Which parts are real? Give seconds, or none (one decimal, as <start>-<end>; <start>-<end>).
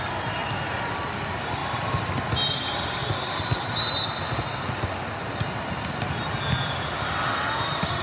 0.0-1.6; 2.1-8.0